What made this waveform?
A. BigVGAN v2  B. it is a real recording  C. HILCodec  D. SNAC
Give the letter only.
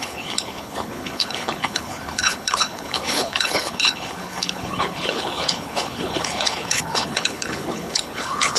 C